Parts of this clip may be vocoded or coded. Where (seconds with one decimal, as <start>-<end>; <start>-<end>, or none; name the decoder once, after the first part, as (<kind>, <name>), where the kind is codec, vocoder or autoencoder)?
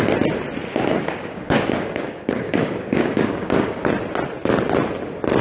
0.7-3.9 (codec, DAC)